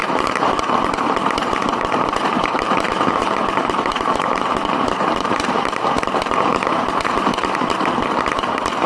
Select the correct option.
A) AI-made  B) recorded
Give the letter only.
A